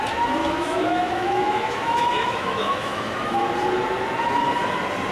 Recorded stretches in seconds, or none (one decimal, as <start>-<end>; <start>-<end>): 0.0-0.4; 3.5-5.1